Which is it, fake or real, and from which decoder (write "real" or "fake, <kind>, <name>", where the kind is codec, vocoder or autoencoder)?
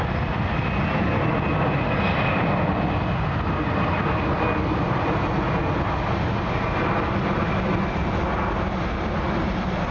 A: real